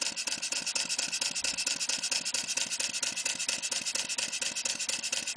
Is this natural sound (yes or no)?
yes